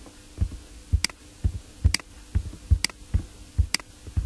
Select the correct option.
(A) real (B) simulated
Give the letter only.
A